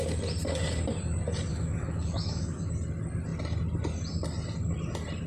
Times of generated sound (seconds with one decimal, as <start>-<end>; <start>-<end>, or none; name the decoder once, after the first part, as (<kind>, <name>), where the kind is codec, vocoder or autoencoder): 1.5-2.7 (autoencoder, DAC-VAE)

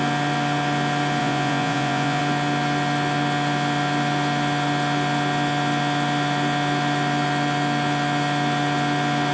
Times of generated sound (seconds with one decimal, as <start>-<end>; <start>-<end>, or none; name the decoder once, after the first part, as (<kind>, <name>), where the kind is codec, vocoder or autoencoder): 1.2-2.2 (vocoder, Vocos)

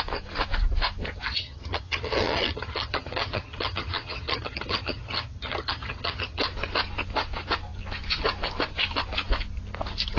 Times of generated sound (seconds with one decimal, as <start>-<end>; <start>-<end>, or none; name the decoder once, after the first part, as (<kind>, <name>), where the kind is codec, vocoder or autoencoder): 1.2-6.4 (vocoder, HiFi-GAN)

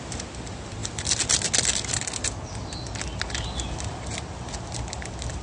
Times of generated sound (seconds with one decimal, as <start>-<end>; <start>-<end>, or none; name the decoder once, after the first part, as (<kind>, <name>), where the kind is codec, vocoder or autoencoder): none

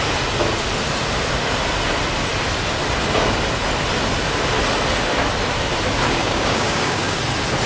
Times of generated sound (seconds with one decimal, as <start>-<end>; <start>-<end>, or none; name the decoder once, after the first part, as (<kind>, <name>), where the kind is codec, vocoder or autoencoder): 6.2-7.2 (codec, DAC)

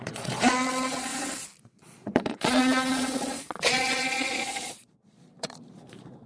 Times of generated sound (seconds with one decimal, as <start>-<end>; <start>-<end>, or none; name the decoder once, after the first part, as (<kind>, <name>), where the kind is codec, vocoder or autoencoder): 0.0-1.1 (vocoder, Vocos); 1.6-6.3

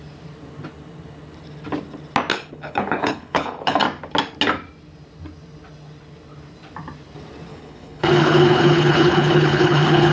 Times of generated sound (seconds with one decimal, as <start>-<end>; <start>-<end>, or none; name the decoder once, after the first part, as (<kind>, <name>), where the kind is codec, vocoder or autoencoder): 2.3-3.8 (codec, HILCodec); 7.5-10.1

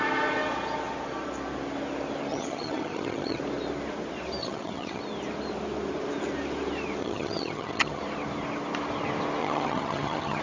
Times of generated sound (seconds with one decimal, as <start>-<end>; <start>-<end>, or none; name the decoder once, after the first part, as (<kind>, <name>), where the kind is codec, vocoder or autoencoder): 2.3-3.4 (vocoder, HiFi-GAN); 4.4-5.0; 7.0-8.0; 9.4-10.4